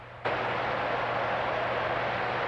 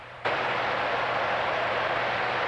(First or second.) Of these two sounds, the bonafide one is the first